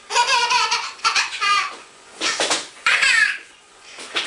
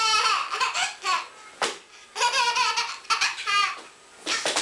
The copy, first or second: first